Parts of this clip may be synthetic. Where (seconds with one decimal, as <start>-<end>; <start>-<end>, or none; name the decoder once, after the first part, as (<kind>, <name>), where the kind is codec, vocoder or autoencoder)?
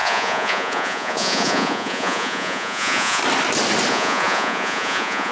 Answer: 0.0-3.2 (vocoder, Vocos); 3.9-5.3